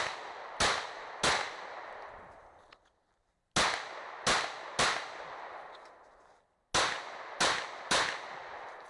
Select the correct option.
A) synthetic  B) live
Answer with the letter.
B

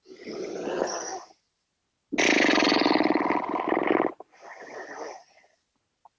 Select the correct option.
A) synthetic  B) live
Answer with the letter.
B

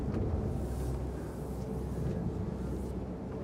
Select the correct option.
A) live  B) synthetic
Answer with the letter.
A